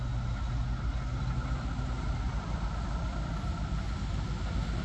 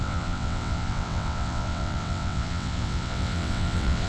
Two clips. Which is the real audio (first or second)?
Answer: first